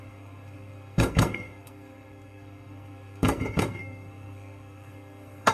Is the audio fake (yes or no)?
yes